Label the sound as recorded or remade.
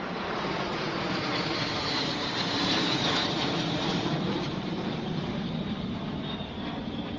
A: remade